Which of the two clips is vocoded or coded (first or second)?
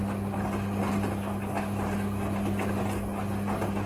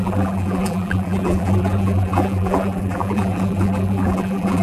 second